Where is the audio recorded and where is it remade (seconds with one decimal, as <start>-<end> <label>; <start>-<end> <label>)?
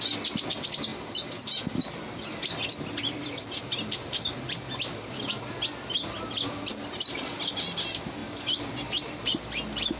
0.0-10.0 recorded